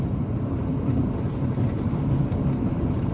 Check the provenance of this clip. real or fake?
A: fake